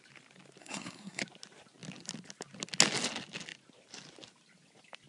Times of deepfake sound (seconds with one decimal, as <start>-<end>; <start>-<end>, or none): 0.6-1.2